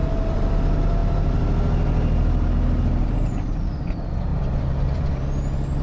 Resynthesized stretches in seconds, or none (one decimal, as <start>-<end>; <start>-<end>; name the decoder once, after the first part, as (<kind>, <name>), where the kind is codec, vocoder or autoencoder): 0.0-0.5 (vocoder, BigVGAN v2); 4.3-5.2